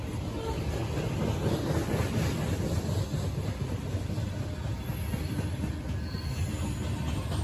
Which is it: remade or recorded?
recorded